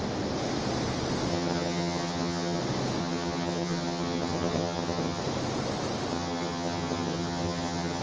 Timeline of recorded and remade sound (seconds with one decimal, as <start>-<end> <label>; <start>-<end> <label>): 0.0-1.3 recorded; 1.3-2.6 remade; 2.6-3.0 recorded; 3.0-5.2 remade; 5.2-6.1 recorded; 6.1-8.0 remade